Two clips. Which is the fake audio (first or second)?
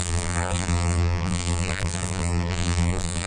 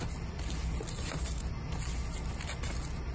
first